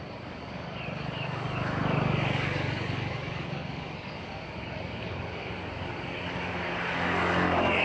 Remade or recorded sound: remade